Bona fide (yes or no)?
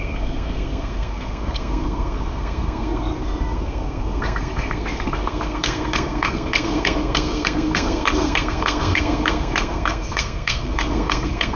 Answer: no